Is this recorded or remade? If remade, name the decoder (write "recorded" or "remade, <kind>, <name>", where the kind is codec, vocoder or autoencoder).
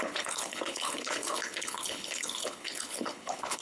remade, codec, HILCodec